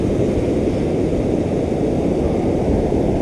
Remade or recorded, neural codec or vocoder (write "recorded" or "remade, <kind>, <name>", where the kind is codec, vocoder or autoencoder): recorded